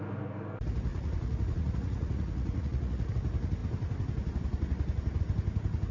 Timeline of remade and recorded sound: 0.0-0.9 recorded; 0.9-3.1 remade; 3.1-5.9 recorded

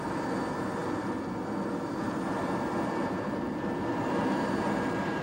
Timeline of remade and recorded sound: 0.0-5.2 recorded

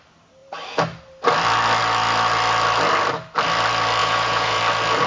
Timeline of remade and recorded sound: 0.0-4.0 recorded; 4.0-4.6 remade; 4.6-5.1 recorded

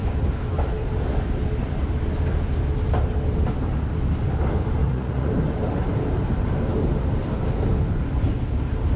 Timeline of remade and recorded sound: 0.0-4.8 recorded; 4.8-5.3 remade; 5.3-9.0 recorded

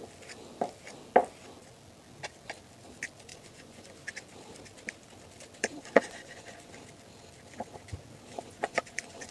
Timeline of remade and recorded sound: 0.0-3.3 recorded; 3.3-4.1 remade; 4.1-5.6 recorded; 5.6-6.7 remade; 6.7-8.3 recorded; 8.3-9.3 remade

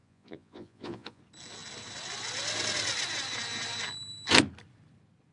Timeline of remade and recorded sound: 0.0-1.2 remade; 1.2-5.3 recorded

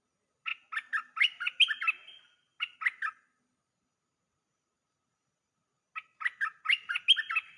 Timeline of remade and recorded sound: 0.0-7.6 recorded

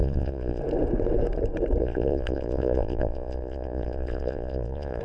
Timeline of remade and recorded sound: 0.0-0.6 remade; 0.6-1.8 recorded; 1.8-5.0 remade